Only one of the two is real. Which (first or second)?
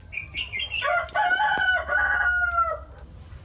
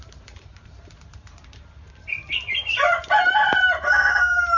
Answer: first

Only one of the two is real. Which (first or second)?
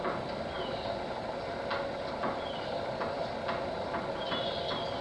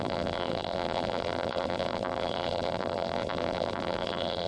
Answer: first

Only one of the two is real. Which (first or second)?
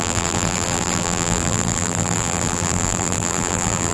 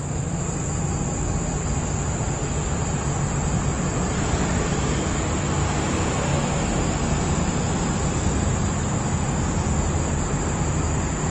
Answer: second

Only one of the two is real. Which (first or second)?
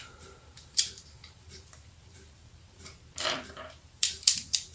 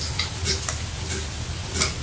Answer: second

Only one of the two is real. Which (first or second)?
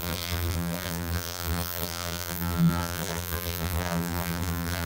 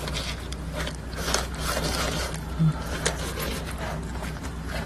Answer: second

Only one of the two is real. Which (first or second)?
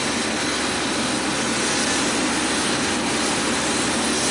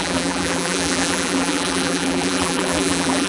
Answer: first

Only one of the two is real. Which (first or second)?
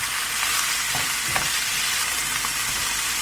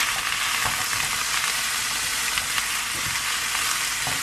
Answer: second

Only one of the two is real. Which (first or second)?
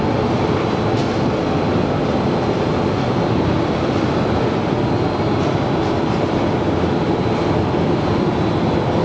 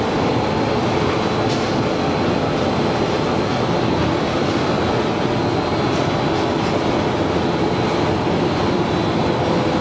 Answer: second